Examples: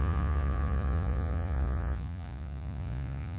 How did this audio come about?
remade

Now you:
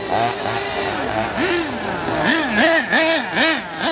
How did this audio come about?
recorded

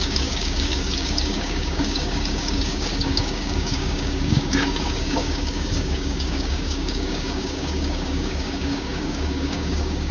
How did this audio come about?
remade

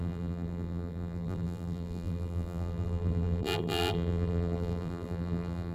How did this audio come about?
remade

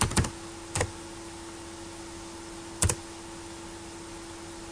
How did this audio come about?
recorded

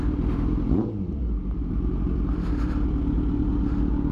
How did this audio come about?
recorded